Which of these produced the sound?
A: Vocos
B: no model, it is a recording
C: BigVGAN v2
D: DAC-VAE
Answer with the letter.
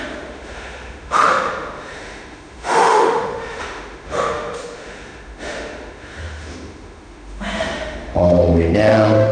D